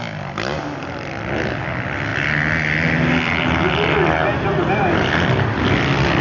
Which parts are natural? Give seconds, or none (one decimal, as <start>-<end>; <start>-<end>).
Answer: 0.0-6.2